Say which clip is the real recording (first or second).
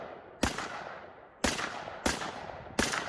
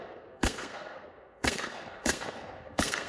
first